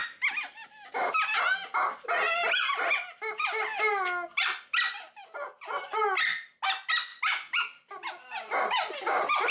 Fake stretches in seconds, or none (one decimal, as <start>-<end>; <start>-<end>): none